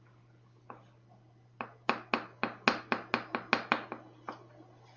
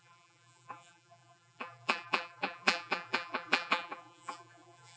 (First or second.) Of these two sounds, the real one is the first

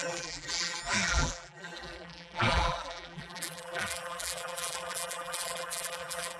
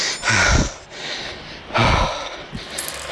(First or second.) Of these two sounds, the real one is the second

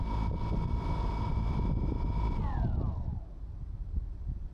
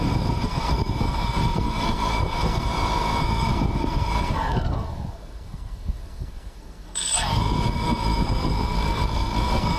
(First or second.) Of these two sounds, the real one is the first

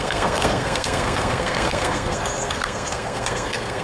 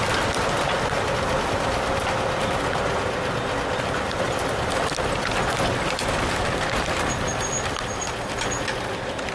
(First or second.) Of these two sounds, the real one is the second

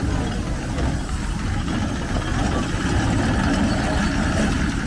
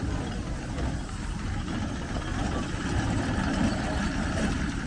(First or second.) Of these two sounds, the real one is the first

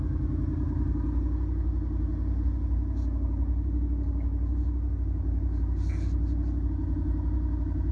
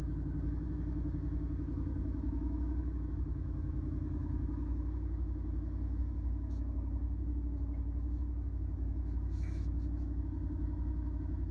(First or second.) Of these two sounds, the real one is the first